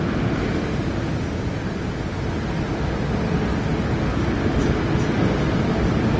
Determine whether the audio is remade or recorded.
recorded